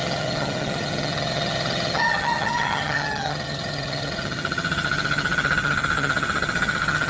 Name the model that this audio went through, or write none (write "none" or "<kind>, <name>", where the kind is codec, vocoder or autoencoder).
vocoder, HiFi-GAN